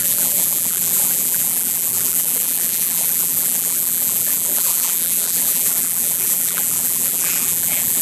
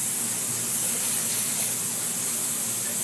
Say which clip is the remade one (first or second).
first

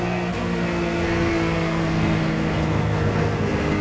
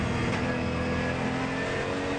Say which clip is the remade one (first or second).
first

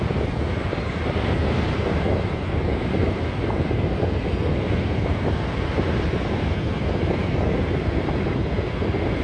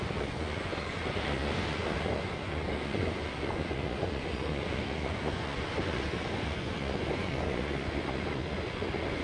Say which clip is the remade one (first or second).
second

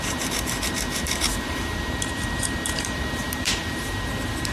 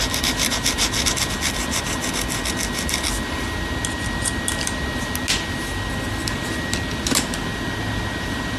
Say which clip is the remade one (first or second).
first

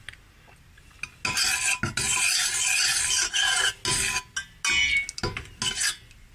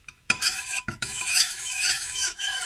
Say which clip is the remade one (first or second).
second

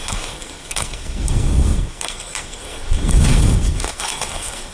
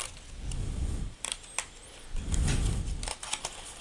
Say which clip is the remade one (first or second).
first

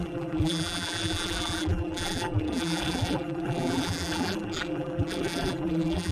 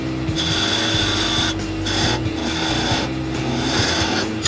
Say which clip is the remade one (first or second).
first